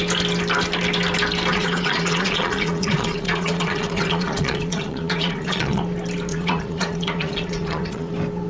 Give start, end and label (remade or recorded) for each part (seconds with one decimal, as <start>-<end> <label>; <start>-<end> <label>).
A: 0.0-1.5 recorded; 1.5-5.8 remade; 5.8-6.3 recorded; 6.3-8.1 remade; 8.1-8.5 recorded